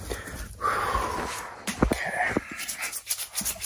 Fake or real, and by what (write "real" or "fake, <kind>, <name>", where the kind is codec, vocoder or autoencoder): real